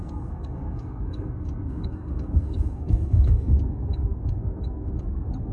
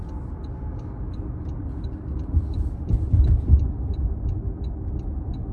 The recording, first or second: second